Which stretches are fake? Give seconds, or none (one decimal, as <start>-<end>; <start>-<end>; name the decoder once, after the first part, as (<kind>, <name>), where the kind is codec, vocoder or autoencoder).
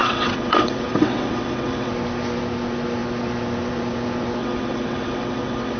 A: 0.0-1.9 (vocoder, WaveNeXt); 4.4-5.8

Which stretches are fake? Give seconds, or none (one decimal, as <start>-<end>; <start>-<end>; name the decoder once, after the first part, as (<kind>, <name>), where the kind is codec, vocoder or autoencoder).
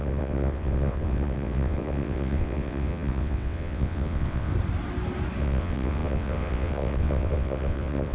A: 0.0-4.5 (vocoder, WaveNeXt); 5.4-8.1